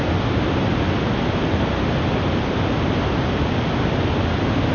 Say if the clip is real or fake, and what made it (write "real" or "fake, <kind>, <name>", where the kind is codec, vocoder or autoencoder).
real